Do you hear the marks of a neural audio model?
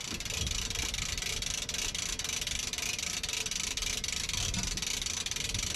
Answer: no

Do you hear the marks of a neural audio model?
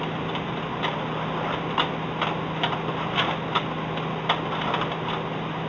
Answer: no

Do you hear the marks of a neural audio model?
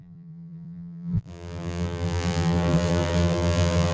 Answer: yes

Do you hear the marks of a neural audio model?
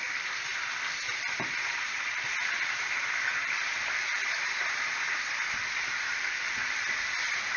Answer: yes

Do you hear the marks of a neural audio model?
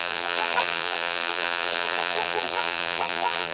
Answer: yes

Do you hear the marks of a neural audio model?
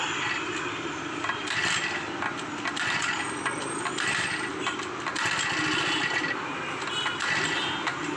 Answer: no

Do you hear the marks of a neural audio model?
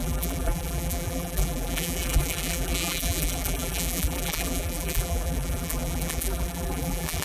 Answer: yes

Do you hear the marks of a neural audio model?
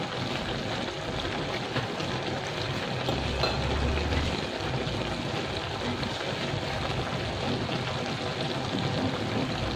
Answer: no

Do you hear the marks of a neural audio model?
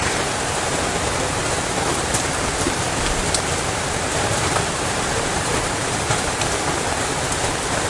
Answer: yes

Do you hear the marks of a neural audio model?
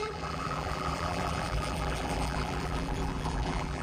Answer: yes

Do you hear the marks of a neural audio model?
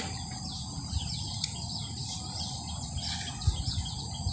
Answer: no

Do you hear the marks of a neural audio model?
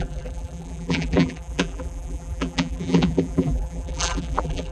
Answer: yes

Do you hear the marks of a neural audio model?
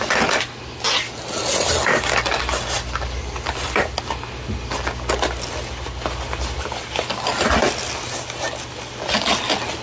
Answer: no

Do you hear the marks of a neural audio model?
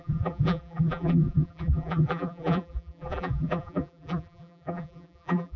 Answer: yes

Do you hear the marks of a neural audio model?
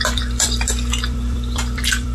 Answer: yes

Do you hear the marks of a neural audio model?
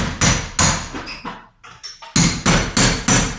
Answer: no